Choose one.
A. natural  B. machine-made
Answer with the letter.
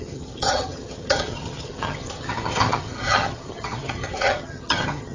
B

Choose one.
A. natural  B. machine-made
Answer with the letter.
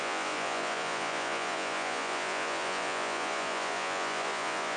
B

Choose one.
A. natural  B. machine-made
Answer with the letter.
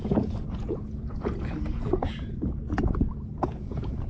B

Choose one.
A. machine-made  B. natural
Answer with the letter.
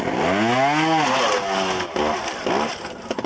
B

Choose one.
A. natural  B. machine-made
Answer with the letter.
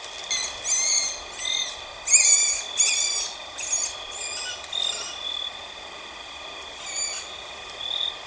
A